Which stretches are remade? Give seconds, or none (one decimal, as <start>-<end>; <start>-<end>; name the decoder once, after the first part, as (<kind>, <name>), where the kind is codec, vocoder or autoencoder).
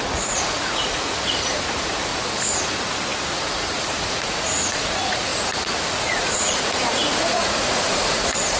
0.0-2.1 (vocoder, Vocos); 2.6-8.6